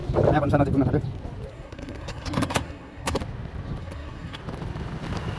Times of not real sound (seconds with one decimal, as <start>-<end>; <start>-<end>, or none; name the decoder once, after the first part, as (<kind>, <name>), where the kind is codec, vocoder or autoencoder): 1.5-3.2 (codec, SNAC); 3.8-4.4